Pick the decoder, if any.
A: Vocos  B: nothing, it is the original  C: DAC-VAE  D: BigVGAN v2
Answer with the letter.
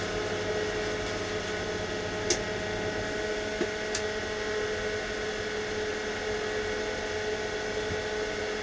B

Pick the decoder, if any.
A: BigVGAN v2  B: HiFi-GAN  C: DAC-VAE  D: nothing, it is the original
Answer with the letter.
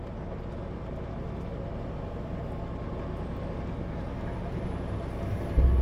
D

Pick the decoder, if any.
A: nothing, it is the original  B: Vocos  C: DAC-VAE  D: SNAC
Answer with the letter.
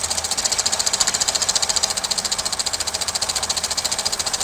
A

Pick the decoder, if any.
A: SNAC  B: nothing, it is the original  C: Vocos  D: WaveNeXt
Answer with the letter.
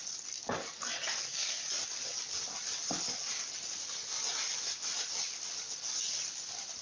B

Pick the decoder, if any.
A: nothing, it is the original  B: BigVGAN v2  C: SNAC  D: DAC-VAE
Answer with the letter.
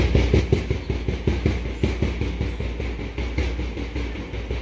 A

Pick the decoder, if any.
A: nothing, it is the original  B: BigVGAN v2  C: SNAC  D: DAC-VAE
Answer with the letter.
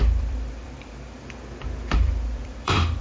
B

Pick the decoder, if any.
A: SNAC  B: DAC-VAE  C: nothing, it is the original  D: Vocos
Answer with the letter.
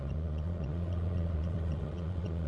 D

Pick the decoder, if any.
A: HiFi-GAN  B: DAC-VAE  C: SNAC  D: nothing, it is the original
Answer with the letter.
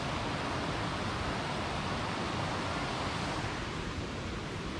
D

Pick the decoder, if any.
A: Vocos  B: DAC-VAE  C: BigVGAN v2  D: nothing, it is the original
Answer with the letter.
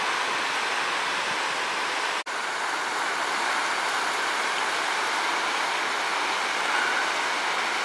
D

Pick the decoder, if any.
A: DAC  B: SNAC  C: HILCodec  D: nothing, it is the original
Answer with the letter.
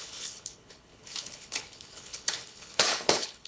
C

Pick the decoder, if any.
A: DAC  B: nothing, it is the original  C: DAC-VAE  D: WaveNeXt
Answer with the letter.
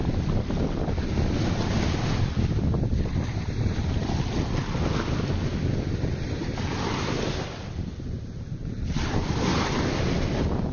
B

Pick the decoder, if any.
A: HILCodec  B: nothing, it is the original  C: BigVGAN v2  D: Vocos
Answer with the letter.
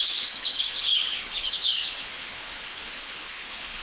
A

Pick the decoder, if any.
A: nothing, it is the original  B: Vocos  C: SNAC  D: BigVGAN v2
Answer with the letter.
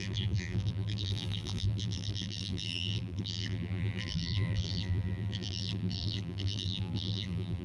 D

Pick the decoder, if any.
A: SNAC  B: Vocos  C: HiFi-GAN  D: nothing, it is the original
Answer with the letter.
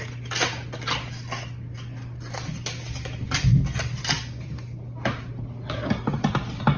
D